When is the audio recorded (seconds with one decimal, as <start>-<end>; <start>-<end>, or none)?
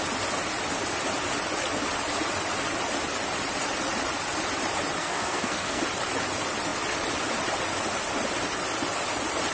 0.0-5.0; 5.8-9.5